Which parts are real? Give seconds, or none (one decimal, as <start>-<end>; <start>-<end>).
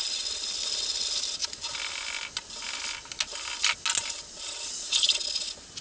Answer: 0.0-5.8